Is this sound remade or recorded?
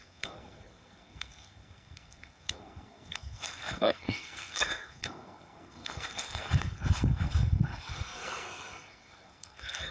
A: remade